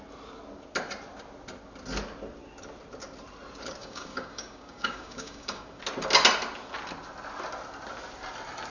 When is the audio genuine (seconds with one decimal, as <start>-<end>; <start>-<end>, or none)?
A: 0.0-3.8; 5.8-8.7